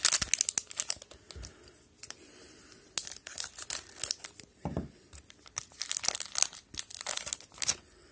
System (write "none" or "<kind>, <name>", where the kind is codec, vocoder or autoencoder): none